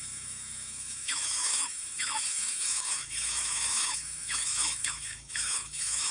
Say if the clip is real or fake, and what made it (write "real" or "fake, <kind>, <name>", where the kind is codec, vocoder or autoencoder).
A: fake, autoencoder, DAC-VAE